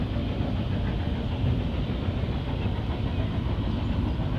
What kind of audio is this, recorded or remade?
recorded